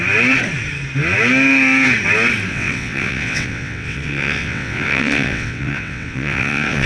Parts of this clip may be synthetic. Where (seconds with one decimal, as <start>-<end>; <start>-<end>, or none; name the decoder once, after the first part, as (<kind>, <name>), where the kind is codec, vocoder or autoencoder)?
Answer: 2.5-6.9 (vocoder, WaveNeXt)